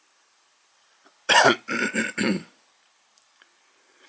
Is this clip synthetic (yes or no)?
yes